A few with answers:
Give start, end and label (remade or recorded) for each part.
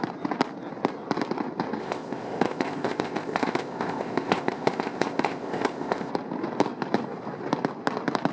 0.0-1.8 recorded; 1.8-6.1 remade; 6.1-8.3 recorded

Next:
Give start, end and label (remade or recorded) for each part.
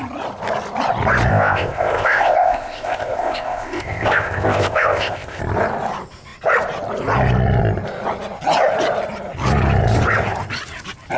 0.0-1.3 recorded; 1.3-5.4 remade; 5.4-11.2 recorded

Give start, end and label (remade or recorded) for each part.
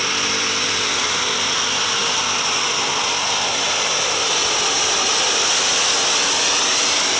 0.0-7.2 recorded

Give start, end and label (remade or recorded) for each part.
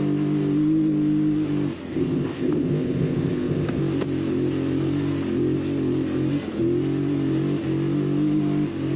0.0-1.9 recorded; 1.9-3.8 remade; 3.8-9.0 recorded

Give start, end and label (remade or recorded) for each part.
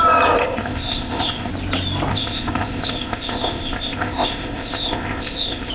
0.0-0.4 recorded; 0.4-1.5 remade; 1.5-2.1 recorded; 2.1-5.7 remade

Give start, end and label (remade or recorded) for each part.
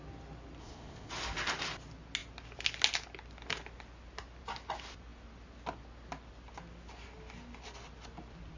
0.0-0.6 recorded; 0.6-1.1 remade; 1.1-8.6 recorded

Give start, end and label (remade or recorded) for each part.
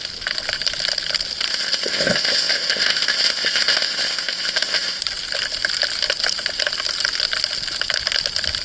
0.0-1.5 recorded; 1.5-5.0 remade; 5.0-8.6 recorded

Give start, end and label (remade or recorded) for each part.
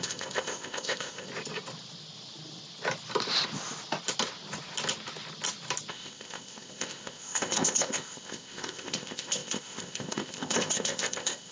0.0-1.3 remade; 1.3-5.9 recorded; 5.9-11.5 remade